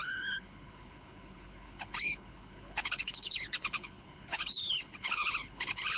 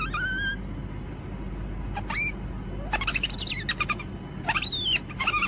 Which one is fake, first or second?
first